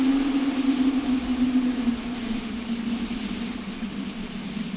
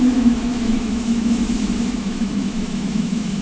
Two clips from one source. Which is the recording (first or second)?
first